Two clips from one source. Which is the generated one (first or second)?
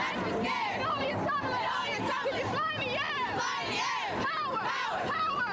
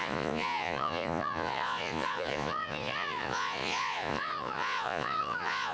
second